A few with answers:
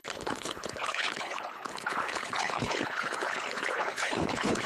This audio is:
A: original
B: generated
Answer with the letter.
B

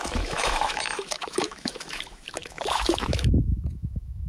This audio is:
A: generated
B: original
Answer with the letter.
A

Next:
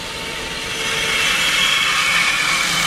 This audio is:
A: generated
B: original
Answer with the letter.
B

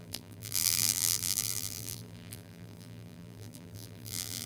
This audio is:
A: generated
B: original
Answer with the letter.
A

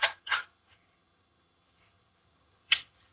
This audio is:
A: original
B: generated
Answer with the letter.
B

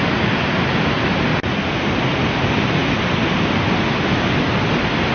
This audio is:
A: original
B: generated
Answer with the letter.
A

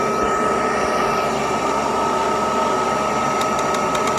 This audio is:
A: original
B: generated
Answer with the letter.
A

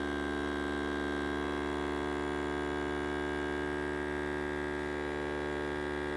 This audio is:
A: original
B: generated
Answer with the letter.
A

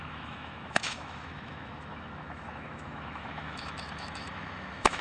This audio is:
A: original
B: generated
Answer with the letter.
B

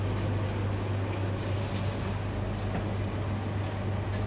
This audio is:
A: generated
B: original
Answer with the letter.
B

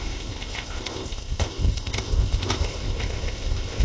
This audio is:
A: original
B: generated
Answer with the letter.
B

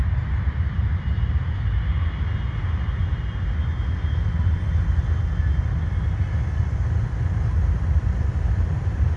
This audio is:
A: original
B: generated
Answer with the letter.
A